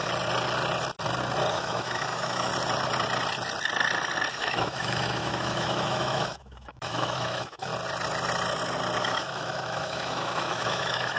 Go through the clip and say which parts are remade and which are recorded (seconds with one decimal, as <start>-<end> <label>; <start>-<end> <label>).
0.0-1.5 recorded; 1.5-2.5 remade; 2.5-4.3 recorded; 4.3-7.7 remade; 7.7-9.0 recorded; 9.0-11.2 remade